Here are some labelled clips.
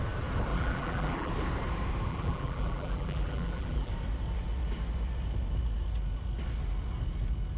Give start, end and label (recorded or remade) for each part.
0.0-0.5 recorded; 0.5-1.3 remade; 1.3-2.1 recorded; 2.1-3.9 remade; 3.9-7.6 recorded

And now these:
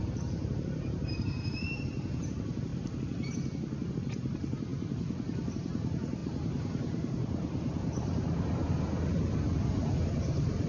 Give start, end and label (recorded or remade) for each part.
0.0-2.7 remade; 2.7-3.9 recorded; 3.9-4.7 remade; 4.7-5.5 recorded; 5.5-10.7 remade